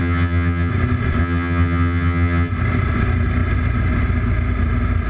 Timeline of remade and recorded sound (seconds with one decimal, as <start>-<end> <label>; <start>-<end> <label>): 0.0-0.7 remade; 0.7-1.2 recorded; 1.2-2.5 remade; 2.5-5.1 recorded